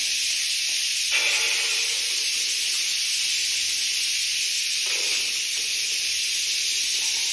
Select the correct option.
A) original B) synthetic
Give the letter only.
A